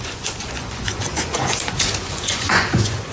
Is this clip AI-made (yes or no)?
yes